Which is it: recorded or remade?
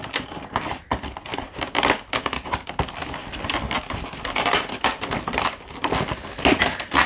recorded